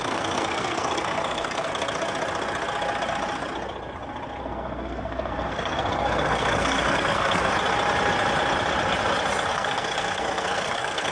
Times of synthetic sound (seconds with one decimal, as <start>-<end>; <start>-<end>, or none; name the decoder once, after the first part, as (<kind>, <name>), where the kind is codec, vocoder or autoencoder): 0.0-1.7 (codec, SNAC); 4.4-7.5; 9.5-11.1